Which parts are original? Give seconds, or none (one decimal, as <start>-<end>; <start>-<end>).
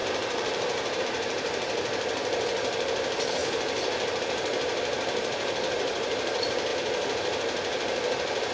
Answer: 3.4-4.2